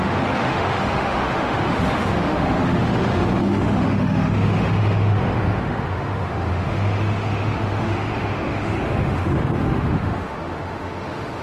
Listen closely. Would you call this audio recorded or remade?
remade